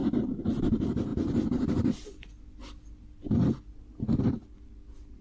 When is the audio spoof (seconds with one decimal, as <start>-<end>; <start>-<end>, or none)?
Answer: none

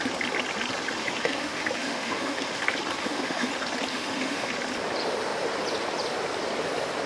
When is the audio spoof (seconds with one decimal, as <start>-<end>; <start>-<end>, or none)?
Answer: 1.0-2.6; 3.0-3.5; 3.9-4.5

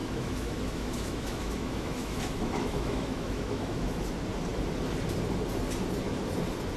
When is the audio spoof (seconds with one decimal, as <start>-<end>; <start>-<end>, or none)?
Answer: 0.0-4.1

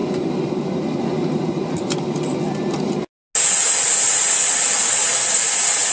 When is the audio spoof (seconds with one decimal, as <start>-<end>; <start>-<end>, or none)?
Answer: none

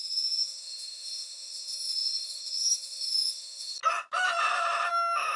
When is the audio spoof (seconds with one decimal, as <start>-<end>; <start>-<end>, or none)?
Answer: 0.0-3.8; 4.9-5.4